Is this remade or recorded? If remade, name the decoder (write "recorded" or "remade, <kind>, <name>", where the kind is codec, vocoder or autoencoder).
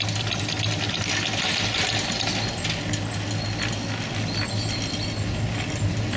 recorded